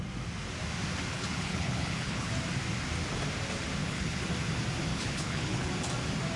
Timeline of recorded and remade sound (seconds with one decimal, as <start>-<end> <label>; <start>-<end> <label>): 0.0-1.1 recorded; 1.1-2.3 remade; 2.3-3.8 recorded; 3.8-4.3 remade; 4.3-4.9 recorded; 4.9-5.7 remade; 5.7-6.4 recorded